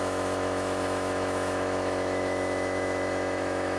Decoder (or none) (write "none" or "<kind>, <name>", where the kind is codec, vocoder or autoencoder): autoencoder, DAC-VAE